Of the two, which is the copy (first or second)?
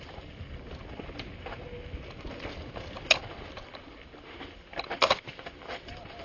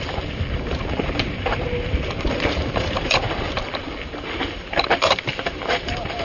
second